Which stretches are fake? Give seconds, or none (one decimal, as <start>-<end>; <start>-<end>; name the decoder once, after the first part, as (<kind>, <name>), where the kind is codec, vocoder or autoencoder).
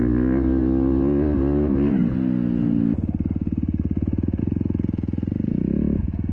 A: none